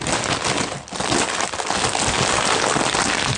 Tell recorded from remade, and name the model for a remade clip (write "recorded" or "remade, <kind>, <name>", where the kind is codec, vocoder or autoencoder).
recorded